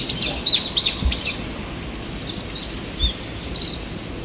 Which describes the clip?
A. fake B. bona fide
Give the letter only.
B